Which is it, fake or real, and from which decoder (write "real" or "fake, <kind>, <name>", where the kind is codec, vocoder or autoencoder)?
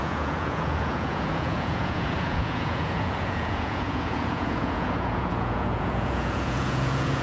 fake, vocoder, Vocos